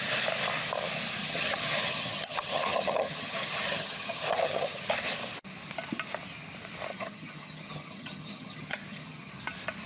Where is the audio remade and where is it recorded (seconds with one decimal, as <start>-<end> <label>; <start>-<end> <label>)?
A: 0.0-1.2 recorded; 1.2-4.9 remade; 4.9-6.9 recorded; 6.9-9.3 remade; 9.3-9.9 recorded